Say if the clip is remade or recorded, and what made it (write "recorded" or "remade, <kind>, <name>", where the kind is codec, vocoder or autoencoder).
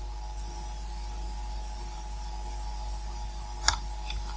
recorded